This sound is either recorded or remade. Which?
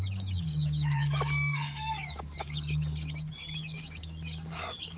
remade